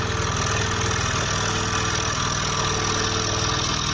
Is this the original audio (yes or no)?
yes